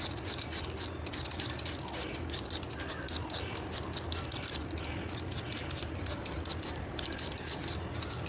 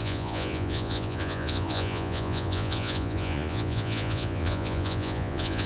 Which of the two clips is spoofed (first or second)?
second